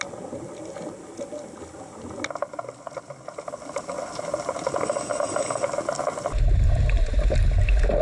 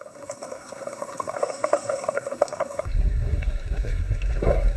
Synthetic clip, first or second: second